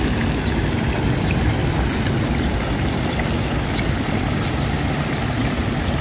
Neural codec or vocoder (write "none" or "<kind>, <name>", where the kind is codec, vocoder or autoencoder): none